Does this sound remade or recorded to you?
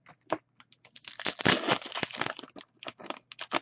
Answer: recorded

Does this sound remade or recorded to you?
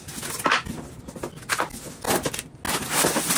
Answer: recorded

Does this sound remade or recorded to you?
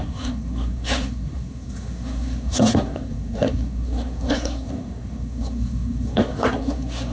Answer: remade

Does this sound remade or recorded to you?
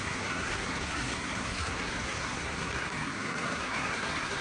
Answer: remade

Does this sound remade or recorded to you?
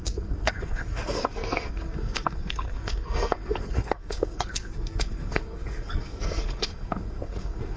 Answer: remade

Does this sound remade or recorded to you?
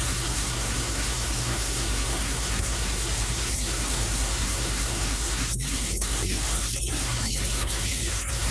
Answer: remade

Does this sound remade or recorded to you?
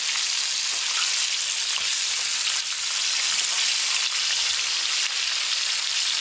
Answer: recorded